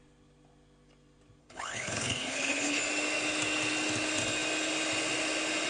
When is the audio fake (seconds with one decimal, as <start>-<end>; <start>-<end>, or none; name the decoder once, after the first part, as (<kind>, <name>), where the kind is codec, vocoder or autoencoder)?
1.4-2.8 (codec, HILCodec)